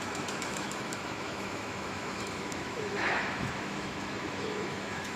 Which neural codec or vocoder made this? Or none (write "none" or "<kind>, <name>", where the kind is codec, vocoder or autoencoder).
autoencoder, DAC-VAE